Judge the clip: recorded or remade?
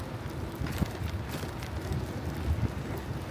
recorded